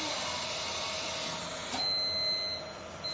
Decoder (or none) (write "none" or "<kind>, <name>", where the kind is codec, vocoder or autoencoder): none